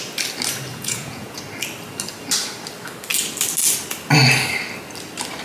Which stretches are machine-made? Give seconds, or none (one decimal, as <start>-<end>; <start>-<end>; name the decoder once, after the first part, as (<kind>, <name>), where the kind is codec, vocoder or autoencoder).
0.7-1.4 (vocoder, Vocos)